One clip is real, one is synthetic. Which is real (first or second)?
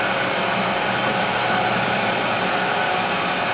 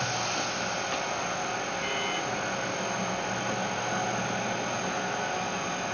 second